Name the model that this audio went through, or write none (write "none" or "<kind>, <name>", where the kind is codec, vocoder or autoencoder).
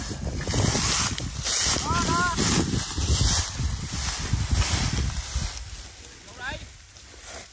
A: none